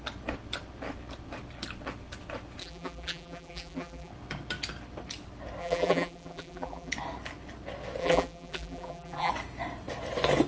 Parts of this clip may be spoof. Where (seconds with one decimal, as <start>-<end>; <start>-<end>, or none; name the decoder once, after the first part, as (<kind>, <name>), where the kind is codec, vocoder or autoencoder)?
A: 2.6-4.1 (vocoder, BigVGAN v2); 5.6-6.9; 8.0-9.3